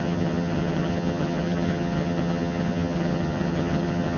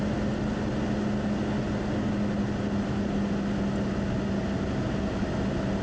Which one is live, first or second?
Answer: second